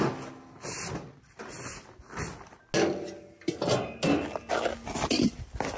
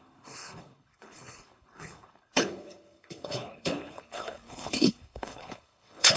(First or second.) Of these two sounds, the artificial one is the second